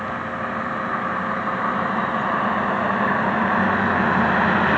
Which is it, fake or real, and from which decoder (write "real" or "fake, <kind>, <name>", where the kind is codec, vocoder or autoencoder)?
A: real